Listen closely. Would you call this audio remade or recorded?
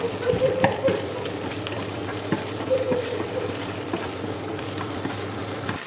remade